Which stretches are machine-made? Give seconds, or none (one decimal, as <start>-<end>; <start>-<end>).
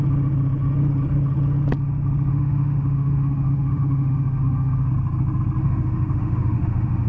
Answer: 2.3-4.9; 5.6-7.1